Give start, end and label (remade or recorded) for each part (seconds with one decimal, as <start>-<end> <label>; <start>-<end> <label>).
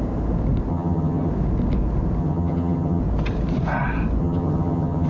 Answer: 0.0-0.7 recorded; 0.7-1.3 remade; 1.3-2.2 recorded; 2.2-3.0 remade; 3.0-4.2 recorded; 4.2-5.1 remade